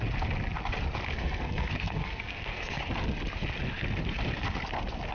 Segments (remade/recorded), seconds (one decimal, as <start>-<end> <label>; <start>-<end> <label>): 0.0-1.1 recorded; 1.1-2.8 remade; 2.8-5.1 recorded